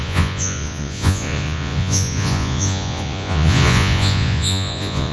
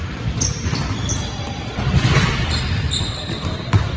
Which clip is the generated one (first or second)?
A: first